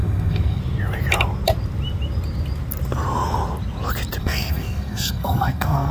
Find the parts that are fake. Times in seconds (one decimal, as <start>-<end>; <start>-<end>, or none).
0.0-0.6; 4.2-5.9